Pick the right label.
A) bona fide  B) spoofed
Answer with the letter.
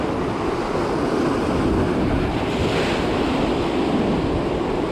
A